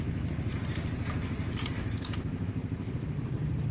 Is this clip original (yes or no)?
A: no